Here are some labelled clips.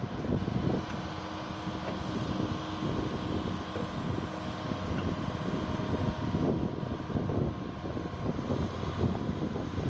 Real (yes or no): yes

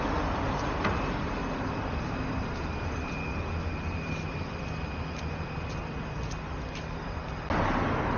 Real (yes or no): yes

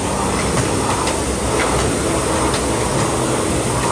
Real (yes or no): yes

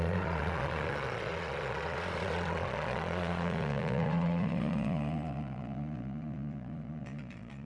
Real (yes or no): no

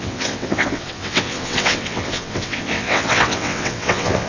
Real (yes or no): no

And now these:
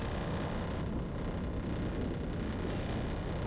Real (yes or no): yes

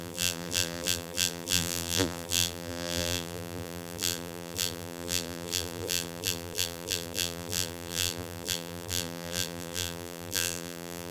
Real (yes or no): no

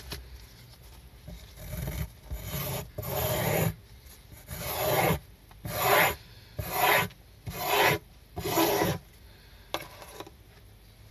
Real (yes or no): yes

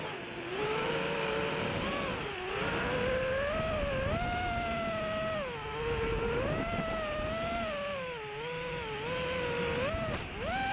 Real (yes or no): yes